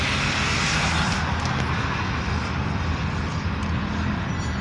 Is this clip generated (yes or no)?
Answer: no